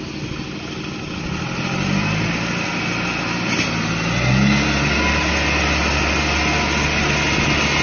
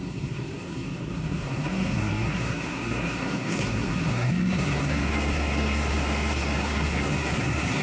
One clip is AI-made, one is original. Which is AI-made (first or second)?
second